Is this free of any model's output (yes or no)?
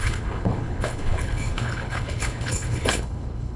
no